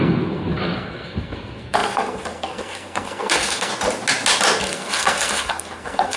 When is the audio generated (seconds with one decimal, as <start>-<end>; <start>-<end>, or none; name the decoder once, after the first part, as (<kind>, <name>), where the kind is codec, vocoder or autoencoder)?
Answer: 0.0-3.7 (codec, SNAC); 4.6-6.2